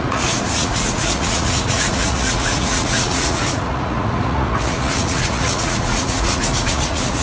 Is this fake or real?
fake